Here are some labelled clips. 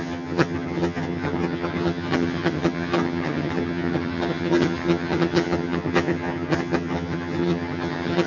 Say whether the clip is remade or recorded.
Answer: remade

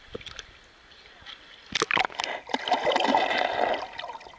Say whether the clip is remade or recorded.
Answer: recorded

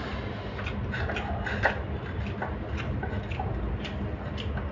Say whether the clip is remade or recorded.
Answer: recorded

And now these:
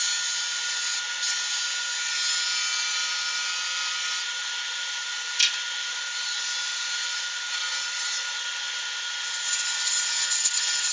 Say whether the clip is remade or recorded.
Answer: recorded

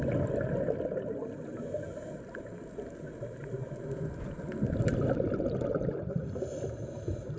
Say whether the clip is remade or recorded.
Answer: recorded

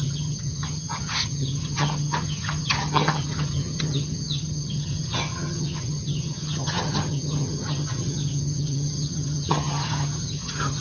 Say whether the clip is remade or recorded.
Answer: remade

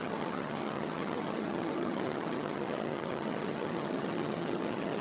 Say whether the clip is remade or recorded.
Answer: remade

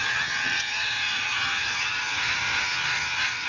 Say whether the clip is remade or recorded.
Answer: remade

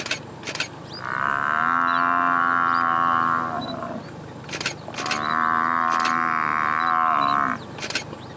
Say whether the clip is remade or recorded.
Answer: recorded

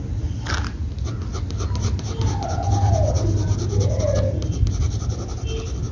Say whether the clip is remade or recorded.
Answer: recorded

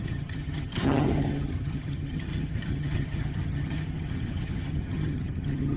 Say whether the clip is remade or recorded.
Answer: remade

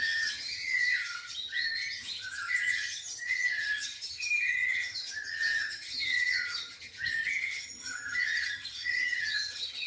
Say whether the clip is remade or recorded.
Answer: remade